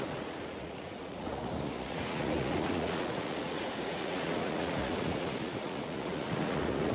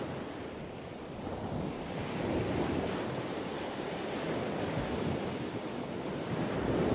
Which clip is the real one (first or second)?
second